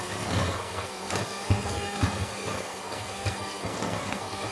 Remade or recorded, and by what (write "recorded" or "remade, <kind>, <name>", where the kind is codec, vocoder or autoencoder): remade, codec, SNAC